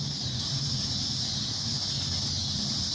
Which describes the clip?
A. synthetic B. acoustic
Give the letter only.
B